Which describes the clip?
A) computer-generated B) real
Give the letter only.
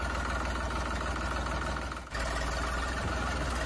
B